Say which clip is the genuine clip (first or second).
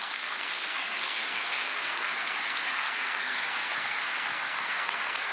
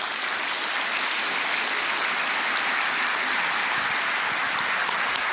second